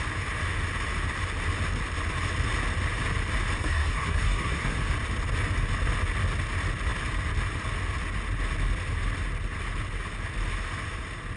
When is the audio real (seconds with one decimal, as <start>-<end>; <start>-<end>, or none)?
0.0-3.6; 4.8-11.4